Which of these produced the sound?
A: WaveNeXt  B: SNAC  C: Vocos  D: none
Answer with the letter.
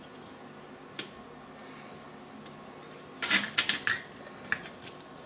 D